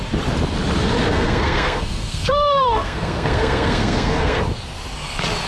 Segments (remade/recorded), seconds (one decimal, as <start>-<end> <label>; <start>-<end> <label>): 0.0-1.1 recorded; 1.1-4.4 remade; 4.4-5.5 recorded